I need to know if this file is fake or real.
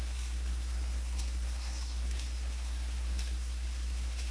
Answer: fake